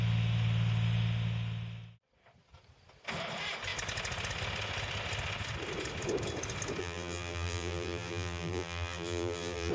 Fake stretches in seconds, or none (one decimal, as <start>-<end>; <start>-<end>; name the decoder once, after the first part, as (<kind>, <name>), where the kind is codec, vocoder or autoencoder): 6.8-9.7 (vocoder, BigVGAN v2)